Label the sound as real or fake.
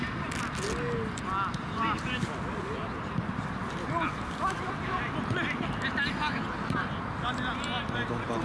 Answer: real